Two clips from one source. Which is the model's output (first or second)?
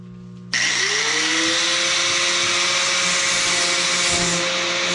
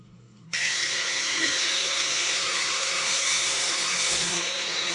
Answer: second